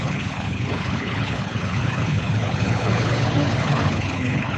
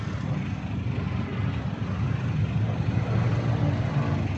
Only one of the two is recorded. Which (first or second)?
second